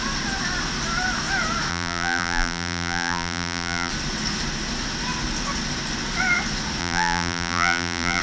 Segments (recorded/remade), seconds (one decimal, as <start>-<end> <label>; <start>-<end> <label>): 0.0-1.7 recorded; 1.7-3.9 remade; 3.9-6.8 recorded; 6.8-8.2 remade